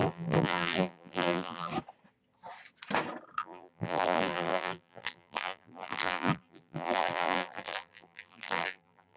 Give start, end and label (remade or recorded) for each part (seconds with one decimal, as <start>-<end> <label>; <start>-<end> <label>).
0.0-1.7 remade; 1.7-3.4 recorded; 3.4-9.2 remade